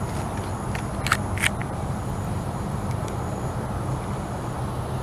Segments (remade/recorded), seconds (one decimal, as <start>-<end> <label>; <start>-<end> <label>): 0.0-1.6 recorded; 1.6-4.6 remade; 4.6-5.0 recorded